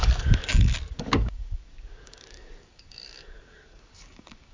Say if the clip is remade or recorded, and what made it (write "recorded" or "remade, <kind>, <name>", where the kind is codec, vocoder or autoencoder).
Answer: remade, codec, DAC